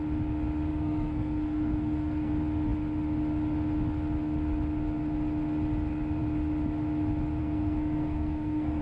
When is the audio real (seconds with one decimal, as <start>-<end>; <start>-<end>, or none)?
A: 0.0-0.7; 2.3-7.4